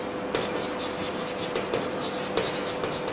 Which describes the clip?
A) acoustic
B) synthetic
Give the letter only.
A